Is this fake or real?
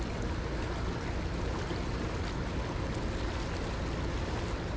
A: real